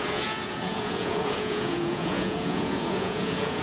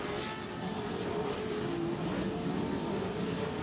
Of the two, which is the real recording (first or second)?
second